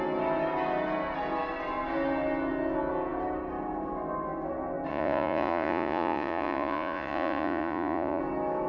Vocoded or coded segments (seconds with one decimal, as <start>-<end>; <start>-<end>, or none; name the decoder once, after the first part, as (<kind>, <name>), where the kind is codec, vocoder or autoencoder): 4.9-8.2 (vocoder, Vocos)